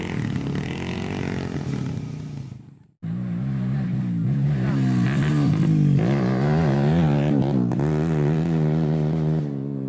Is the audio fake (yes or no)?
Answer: no